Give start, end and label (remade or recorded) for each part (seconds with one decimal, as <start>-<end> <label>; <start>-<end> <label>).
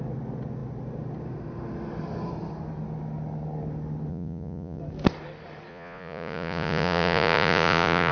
0.0-4.1 recorded; 4.1-4.8 remade; 4.8-5.7 recorded; 5.7-8.1 remade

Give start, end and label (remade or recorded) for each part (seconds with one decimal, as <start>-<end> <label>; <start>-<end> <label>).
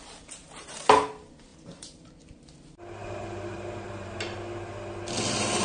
0.0-0.4 recorded; 0.4-1.1 remade; 1.1-1.5 recorded; 1.5-2.1 remade; 2.1-3.0 recorded; 3.0-4.2 remade; 4.2-5.6 recorded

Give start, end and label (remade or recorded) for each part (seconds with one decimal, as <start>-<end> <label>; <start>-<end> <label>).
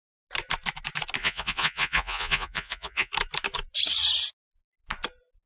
0.0-1.2 recorded; 1.2-3.1 remade; 3.1-5.5 recorded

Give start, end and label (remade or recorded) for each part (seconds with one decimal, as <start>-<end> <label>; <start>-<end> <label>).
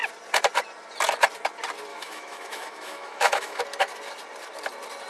0.0-1.9 recorded; 1.9-3.6 remade; 3.6-5.1 recorded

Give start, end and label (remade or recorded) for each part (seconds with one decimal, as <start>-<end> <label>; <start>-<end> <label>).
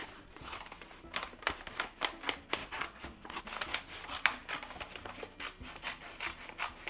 0.0-0.6 remade; 0.6-2.6 recorded; 2.6-3.4 remade; 3.4-6.9 recorded